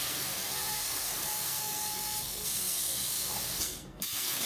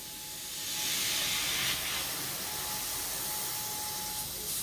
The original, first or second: second